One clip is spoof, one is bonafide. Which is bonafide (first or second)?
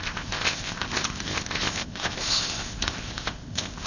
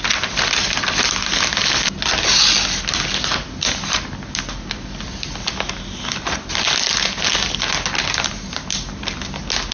second